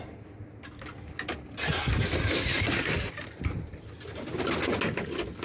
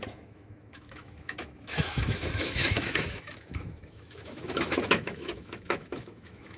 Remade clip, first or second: second